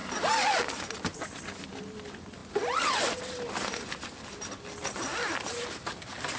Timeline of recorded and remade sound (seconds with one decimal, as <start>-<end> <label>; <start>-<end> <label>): 0.0-6.4 recorded